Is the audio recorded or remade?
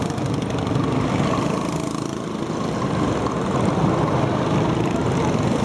recorded